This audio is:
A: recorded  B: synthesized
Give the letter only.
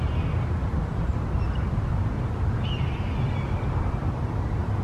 A